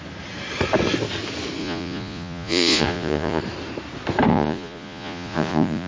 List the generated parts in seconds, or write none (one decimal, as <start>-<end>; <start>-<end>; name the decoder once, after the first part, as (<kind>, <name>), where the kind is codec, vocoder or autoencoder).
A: 1.6-3.4 (vocoder, Vocos); 4.3-5.9